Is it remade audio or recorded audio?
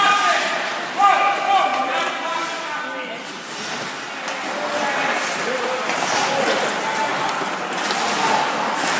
recorded